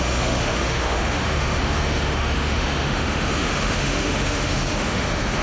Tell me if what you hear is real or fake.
fake